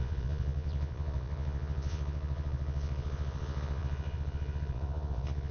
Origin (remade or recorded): remade